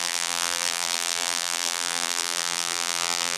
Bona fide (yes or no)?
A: no